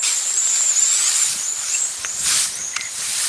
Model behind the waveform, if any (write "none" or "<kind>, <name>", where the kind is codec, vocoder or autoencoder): vocoder, BigVGAN v2